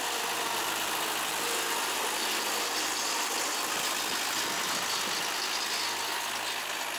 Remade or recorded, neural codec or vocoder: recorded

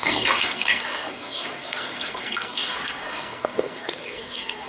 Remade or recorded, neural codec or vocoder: remade, codec, SNAC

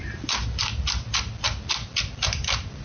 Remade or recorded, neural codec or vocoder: recorded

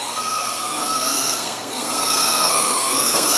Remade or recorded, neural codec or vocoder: remade, codec, SNAC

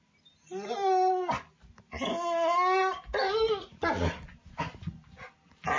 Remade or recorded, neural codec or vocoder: recorded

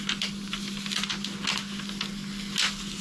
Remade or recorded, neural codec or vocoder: recorded